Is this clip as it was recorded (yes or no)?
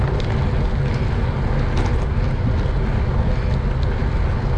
yes